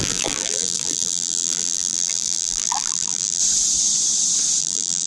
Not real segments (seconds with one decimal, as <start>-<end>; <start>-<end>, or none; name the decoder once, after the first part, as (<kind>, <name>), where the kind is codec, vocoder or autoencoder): 0.0-3.4 (vocoder, BigVGAN v2); 4.6-5.1